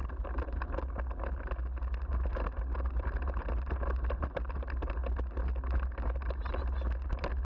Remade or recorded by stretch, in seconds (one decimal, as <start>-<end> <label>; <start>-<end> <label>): 0.0-7.4 recorded